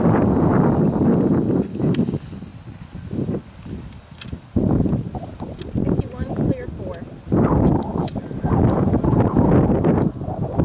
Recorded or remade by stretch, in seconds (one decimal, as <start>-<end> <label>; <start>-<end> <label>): 0.0-10.6 recorded